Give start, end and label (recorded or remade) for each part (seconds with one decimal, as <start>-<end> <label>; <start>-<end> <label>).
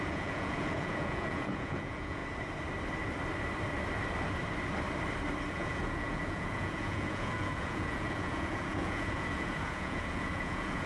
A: 0.0-2.2 remade; 2.2-5.5 recorded; 5.5-10.9 remade